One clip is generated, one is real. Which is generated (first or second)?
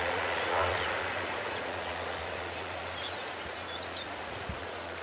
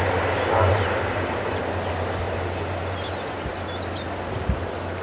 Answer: first